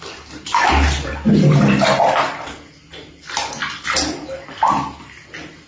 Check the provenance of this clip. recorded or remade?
recorded